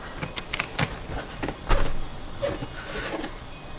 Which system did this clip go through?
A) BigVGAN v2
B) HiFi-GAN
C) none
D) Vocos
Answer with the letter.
C